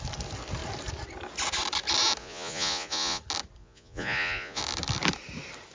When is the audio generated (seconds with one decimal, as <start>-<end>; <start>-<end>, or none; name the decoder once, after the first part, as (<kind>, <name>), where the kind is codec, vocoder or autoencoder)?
2.2-3.2 (vocoder, Vocos); 3.6-4.6